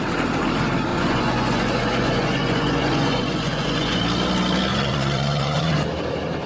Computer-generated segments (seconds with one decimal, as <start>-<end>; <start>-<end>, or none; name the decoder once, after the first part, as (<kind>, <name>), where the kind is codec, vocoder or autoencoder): 0.9-4.0 (vocoder, Vocos); 4.7-5.7